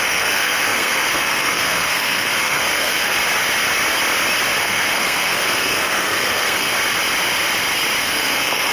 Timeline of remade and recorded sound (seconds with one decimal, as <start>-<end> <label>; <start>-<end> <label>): 0.0-3.2 remade; 3.2-4.6 recorded; 4.6-6.7 remade; 6.7-8.0 recorded; 8.0-8.7 remade